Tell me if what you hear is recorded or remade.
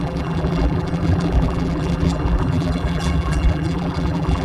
remade